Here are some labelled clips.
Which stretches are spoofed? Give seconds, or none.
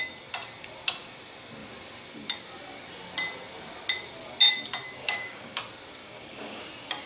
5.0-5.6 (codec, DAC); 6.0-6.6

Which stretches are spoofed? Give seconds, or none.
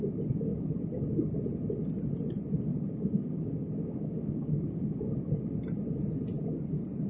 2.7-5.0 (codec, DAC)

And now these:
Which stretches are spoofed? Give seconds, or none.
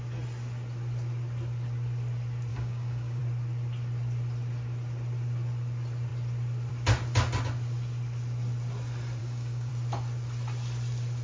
2.5-3.2 (codec, DAC); 9.2-9.7